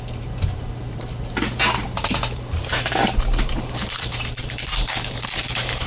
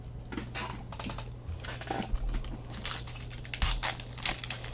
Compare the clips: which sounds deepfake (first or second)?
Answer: first